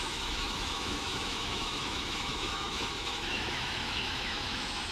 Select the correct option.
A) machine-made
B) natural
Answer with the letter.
A